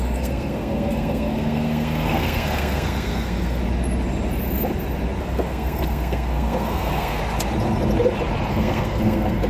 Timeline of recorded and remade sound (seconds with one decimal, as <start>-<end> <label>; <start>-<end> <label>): 0.0-3.6 remade; 3.6-5.2 recorded; 5.2-7.2 remade; 7.2-8.5 recorded; 8.5-9.5 remade